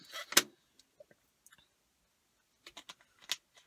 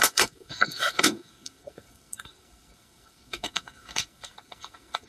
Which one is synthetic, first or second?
second